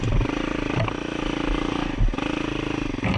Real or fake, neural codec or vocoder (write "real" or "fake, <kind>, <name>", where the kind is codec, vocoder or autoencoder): real